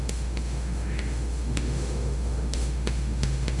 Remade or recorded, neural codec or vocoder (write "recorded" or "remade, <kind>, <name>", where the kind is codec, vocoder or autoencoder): remade, autoencoder, DAC-VAE